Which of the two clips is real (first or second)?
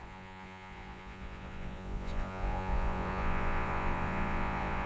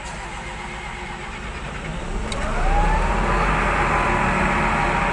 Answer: second